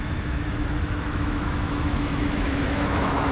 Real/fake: fake